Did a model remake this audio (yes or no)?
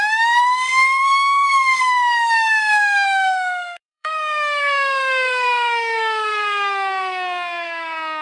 yes